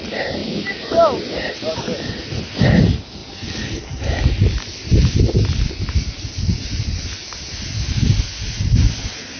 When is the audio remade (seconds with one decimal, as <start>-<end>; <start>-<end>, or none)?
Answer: none